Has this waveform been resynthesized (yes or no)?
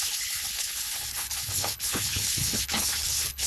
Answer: yes